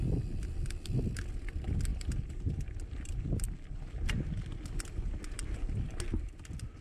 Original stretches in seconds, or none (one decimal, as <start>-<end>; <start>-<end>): 0.0-1.9; 2.5-6.8